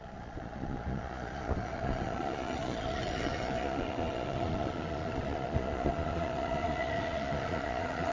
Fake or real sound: fake